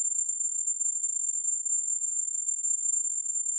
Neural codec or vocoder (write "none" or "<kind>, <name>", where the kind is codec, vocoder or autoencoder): vocoder, Vocos